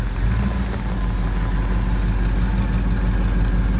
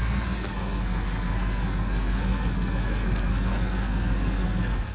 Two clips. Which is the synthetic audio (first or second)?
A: second